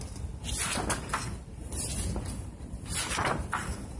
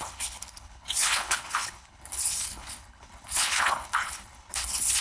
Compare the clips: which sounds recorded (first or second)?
first